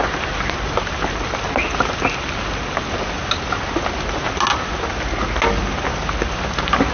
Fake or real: real